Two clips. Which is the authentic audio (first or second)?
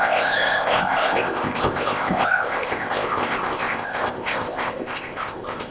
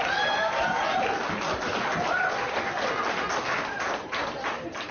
second